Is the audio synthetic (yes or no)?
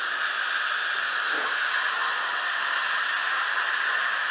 no